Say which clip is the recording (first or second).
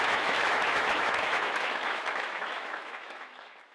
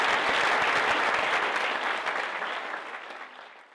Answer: second